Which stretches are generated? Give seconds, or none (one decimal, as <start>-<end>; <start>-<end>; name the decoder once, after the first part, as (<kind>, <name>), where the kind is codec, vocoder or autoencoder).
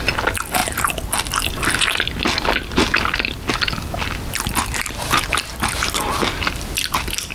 none